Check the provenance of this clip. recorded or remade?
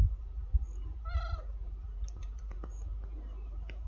remade